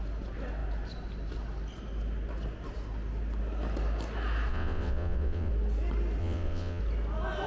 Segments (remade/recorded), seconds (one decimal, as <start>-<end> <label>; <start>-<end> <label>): 0.0-4.5 recorded; 4.5-5.5 remade; 5.5-6.2 recorded; 6.2-6.8 remade; 6.8-7.5 recorded